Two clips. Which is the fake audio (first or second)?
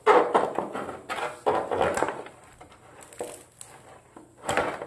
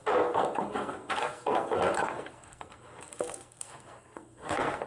second